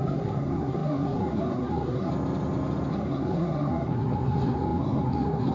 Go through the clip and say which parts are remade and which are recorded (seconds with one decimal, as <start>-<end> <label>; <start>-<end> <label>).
0.0-2.1 remade; 2.1-2.9 recorded; 2.9-5.5 remade